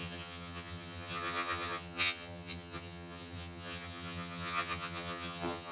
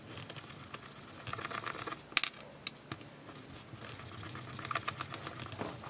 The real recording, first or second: second